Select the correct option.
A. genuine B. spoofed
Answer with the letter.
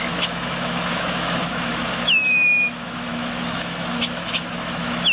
B